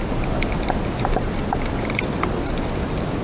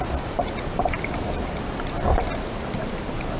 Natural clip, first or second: first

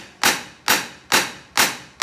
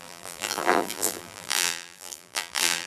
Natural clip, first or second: first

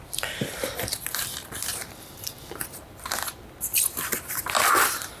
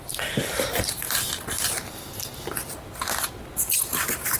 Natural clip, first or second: second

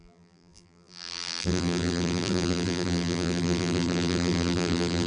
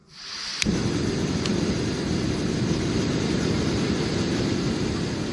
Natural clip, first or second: second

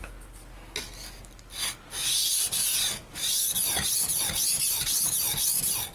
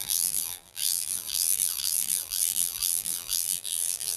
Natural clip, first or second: first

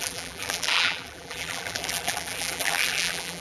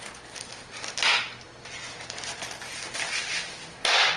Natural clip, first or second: second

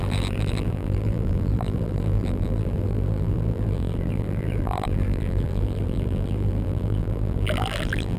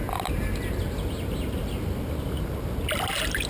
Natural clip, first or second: second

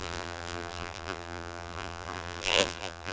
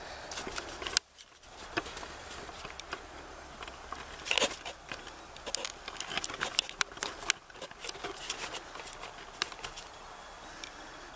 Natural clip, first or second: second